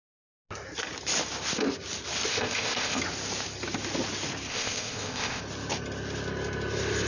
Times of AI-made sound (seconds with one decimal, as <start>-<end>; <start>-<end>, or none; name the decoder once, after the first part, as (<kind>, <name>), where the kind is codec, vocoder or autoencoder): 2.3-3.0 (codec, ZipCodec); 4.5-5.4